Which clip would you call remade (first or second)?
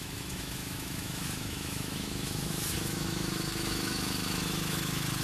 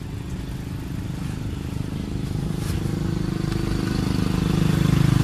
first